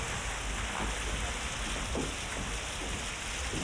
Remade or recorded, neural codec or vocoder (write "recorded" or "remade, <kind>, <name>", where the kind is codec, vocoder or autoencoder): recorded